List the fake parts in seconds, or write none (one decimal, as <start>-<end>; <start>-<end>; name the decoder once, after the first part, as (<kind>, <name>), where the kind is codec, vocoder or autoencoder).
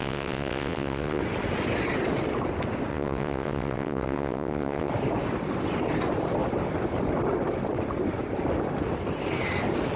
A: 0.0-1.2 (vocoder, WaveNeXt); 2.9-4.9